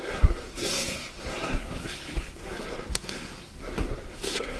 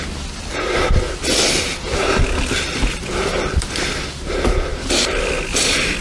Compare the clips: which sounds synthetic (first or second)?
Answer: first